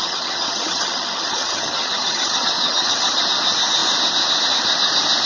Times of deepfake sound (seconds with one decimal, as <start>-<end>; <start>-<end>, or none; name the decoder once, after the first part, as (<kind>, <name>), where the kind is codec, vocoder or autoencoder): 0.0-3.2 (vocoder, HiFi-GAN)

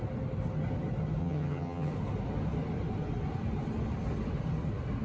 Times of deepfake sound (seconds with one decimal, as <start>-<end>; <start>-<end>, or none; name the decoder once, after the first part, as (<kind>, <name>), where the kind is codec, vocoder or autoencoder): 1.2-1.9 (vocoder, HiFi-GAN)

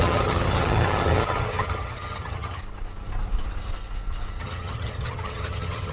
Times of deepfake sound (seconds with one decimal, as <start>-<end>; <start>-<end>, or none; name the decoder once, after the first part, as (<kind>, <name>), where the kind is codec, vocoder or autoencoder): 0.0-2.6 (vocoder, HiFi-GAN); 4.4-5.9